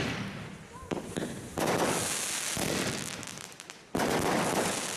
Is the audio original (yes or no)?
yes